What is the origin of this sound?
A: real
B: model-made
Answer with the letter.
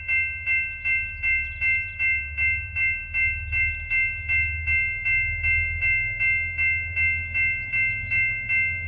A